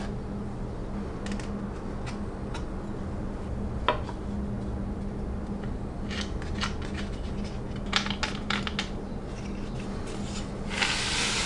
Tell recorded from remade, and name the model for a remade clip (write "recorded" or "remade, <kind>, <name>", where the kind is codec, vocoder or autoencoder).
recorded